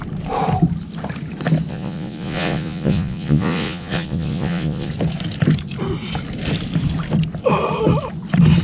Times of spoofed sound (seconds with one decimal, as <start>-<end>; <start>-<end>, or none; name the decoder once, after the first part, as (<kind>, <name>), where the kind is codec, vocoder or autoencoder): 1.7-4.9 (vocoder, Vocos)